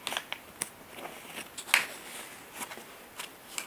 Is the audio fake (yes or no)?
no